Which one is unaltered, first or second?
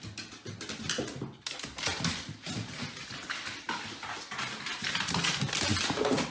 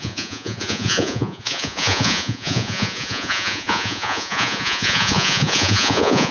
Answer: first